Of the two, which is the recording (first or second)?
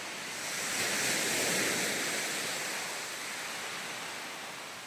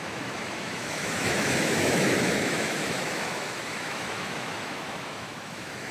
first